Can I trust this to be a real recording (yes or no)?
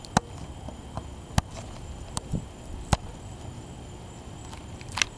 yes